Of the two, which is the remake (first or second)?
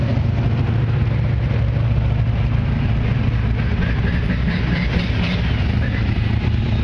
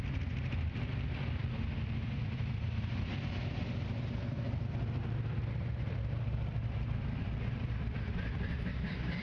second